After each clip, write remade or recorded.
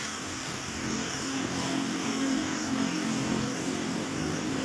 remade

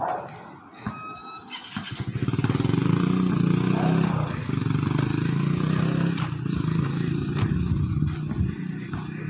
recorded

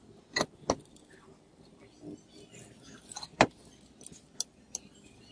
recorded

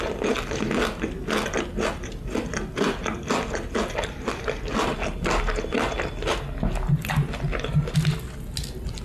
recorded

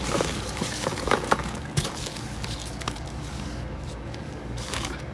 remade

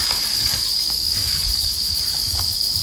remade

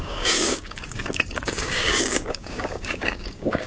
remade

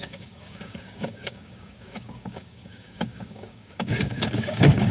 remade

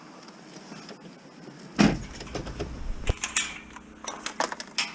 recorded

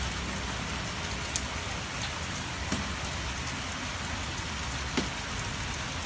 recorded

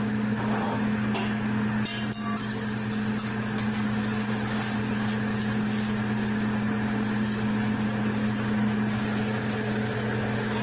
recorded